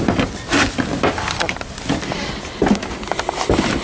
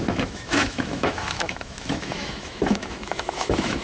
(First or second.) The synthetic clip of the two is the second